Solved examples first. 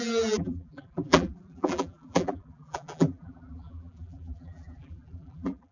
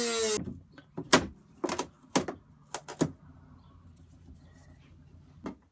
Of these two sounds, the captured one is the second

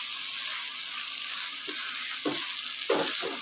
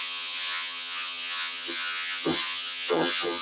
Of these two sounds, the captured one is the first